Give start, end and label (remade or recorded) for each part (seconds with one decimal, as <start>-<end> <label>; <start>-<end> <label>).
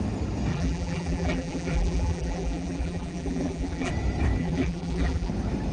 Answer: 0.0-0.5 recorded; 0.5-3.9 remade; 3.9-4.4 recorded; 4.4-5.3 remade; 5.3-5.7 recorded